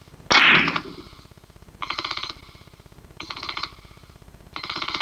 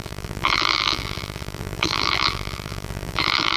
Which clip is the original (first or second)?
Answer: first